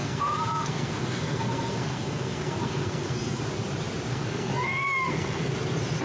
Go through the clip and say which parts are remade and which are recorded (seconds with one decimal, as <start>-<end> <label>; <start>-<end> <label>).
0.0-3.4 remade; 3.4-4.1 recorded; 4.1-5.5 remade; 5.5-6.0 recorded

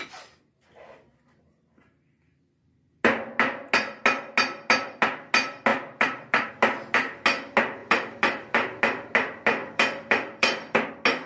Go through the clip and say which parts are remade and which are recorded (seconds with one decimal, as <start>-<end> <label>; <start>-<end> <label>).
0.0-5.7 recorded; 5.7-6.5 remade; 6.5-7.8 recorded; 7.8-8.8 remade; 8.8-9.6 recorded; 9.6-10.9 remade; 10.9-11.3 recorded